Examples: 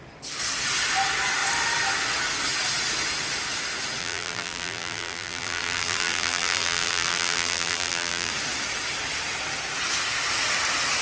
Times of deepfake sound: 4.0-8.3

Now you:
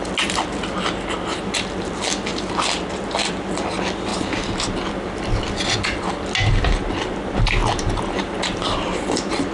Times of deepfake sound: none

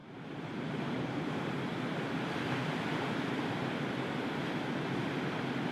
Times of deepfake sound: 0.0-1.2; 1.7-3.4

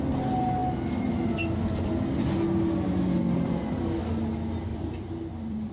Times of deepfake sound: 4.7-5.7

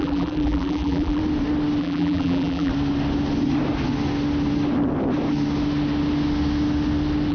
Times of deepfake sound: 0.0-1.2; 1.8-2.7